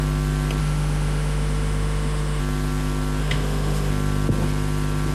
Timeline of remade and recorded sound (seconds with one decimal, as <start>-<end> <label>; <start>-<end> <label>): 0.0-0.6 recorded; 0.6-2.4 remade; 2.4-3.2 recorded; 3.2-3.9 remade; 3.9-5.1 recorded